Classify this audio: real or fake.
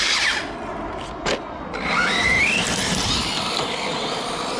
real